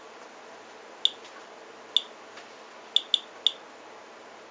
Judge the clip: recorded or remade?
recorded